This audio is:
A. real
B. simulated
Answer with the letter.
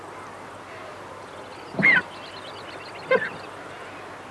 A